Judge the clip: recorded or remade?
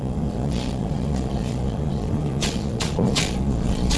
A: remade